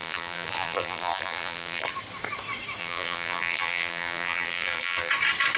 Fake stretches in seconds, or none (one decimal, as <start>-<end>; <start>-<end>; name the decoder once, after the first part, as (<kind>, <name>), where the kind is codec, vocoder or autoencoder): 0.0-1.9 (vocoder, BigVGAN v2); 2.8-5.1